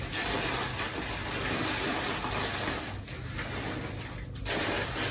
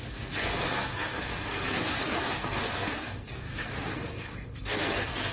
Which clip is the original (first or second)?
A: first